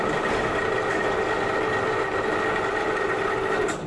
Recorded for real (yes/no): yes